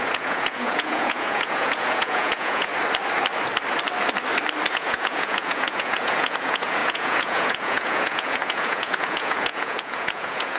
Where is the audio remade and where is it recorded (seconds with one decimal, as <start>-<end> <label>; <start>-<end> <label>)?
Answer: 0.0-2.7 remade; 2.7-4.7 recorded; 4.7-10.6 remade